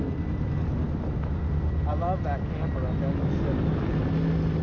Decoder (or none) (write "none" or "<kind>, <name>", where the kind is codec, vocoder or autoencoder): none